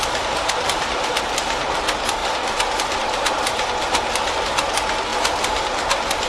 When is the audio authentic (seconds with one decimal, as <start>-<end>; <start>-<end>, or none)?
0.0-6.3

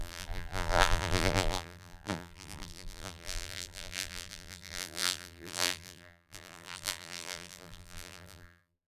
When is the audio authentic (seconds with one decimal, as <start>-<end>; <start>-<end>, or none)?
none

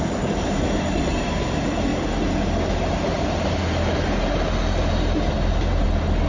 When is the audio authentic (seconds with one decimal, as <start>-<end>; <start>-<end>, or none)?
1.9-5.6

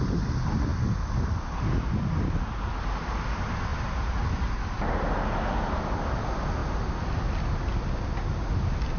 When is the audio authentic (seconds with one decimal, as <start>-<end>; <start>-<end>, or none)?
0.0-3.7; 4.8-9.0